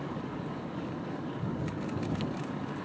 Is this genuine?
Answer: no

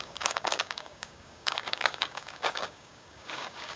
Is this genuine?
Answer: no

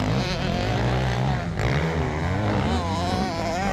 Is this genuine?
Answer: yes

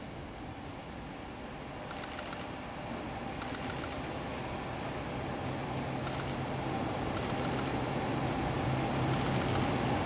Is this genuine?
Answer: yes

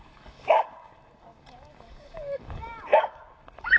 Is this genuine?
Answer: no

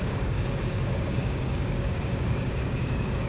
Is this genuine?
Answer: no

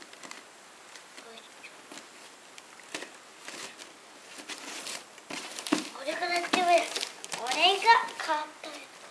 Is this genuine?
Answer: yes